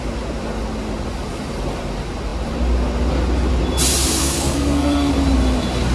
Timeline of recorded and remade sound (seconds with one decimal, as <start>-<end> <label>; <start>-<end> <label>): 0.0-4.2 recorded; 4.2-5.1 remade; 5.1-5.9 recorded